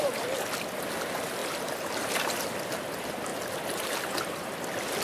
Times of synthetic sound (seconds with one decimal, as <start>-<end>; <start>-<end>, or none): 0.0-3.3; 3.9-5.0